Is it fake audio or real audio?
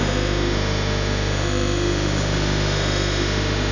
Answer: fake